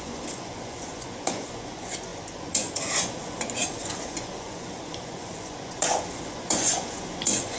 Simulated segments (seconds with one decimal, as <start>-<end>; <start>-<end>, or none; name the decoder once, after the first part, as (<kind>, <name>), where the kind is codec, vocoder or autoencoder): 0.0-7.6 (vocoder, Vocos)

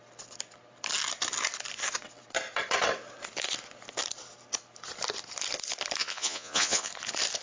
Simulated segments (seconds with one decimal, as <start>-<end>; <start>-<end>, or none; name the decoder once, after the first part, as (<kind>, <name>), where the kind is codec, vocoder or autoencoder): 6.0-6.9 (vocoder, Vocos)

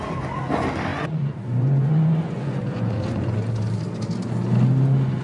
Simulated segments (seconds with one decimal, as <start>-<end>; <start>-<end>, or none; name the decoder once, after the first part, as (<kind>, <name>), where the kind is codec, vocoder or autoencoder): 0.9-3.5 (vocoder, Vocos)

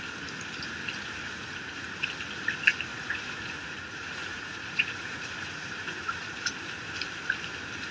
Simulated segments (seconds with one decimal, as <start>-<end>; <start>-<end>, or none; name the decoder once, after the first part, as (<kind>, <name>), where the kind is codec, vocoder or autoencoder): 1.2-2.1 (vocoder, Vocos); 2.9-6.3

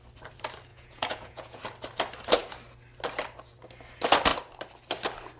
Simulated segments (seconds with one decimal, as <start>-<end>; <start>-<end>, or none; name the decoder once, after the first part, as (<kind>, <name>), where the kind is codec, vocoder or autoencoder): 0.7-1.6 (vocoder, Vocos)

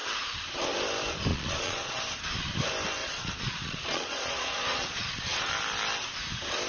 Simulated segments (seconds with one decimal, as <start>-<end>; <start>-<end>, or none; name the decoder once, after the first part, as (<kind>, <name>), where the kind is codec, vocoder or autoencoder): 1.3-2.0 (vocoder, Vocos); 3.0-5.5

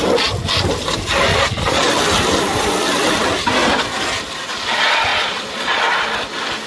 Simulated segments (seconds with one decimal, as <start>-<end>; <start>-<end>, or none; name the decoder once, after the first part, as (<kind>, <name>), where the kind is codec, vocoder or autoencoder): 1.3-1.9 (vocoder, Vocos); 5.1-5.8

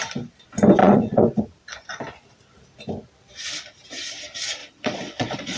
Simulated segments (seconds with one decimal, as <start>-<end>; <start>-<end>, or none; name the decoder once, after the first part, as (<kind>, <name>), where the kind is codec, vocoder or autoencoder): 0.8-1.4 (vocoder, Vocos); 4.6-5.6